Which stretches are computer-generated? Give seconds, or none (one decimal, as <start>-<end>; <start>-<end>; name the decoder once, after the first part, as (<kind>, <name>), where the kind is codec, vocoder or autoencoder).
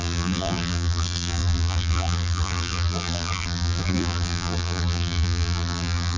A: 0.0-6.2 (vocoder, BigVGAN v2)